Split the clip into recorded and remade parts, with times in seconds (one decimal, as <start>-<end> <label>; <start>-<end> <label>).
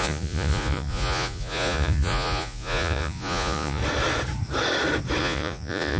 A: 0.0-3.8 remade; 3.8-5.2 recorded; 5.2-6.0 remade